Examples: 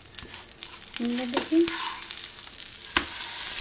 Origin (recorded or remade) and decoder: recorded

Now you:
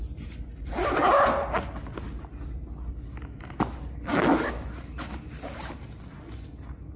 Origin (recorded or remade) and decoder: recorded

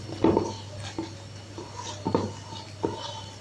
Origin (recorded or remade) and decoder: recorded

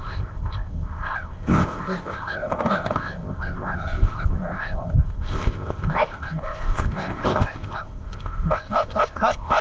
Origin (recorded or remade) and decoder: remade, codec, ZipCodec